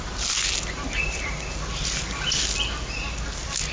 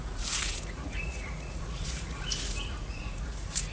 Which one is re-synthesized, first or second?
second